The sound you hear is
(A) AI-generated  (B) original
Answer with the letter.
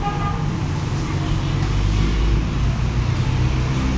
B